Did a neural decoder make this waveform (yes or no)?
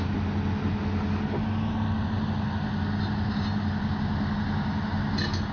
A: no